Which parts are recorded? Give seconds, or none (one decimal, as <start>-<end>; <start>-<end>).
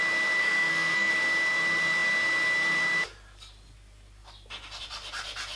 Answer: 0.0-0.4; 1.1-5.6